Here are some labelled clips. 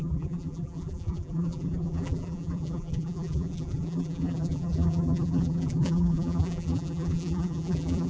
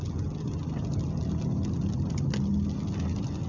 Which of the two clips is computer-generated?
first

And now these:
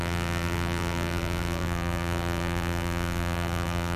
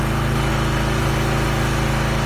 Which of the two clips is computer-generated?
first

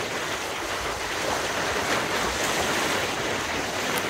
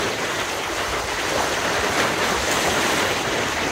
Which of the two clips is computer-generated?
second